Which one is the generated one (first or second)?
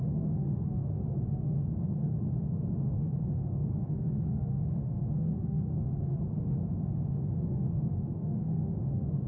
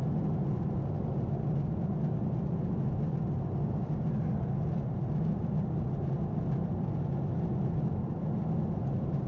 first